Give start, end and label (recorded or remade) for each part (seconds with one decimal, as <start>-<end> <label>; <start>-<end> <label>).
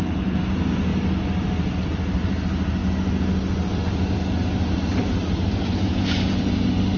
0.0-0.9 remade; 0.9-1.8 recorded; 1.8-2.8 remade; 2.8-5.0 recorded; 5.0-5.9 remade; 5.9-6.4 recorded; 6.4-7.0 remade